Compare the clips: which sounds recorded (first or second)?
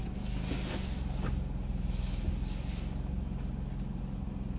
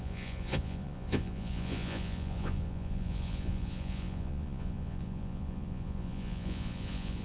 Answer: first